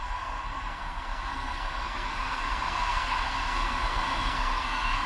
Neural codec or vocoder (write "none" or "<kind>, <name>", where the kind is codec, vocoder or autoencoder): codec, SNAC